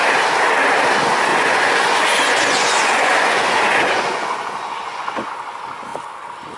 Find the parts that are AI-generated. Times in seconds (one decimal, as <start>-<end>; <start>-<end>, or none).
1.3-5.3